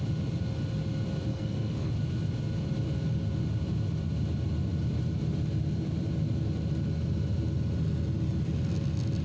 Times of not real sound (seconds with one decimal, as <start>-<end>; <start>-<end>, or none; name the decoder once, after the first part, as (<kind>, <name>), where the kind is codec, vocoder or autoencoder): 1.3-1.9 (codec, SNAC)